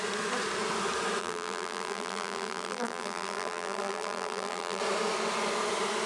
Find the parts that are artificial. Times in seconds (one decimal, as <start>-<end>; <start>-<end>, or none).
1.2-4.8